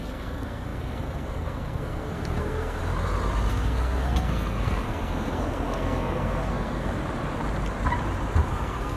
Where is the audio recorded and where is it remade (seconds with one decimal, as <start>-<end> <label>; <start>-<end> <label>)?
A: 0.0-2.8 remade; 2.8-3.5 recorded; 3.5-7.0 remade; 7.0-8.5 recorded; 8.5-9.0 remade